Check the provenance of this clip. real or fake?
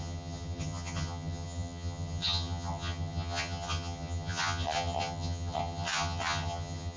fake